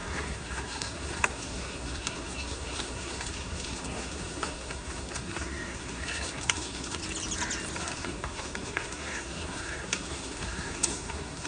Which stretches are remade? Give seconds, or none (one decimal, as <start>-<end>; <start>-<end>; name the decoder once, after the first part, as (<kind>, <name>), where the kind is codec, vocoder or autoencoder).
0.0-7.0 (codec, SNAC); 7.8-11.5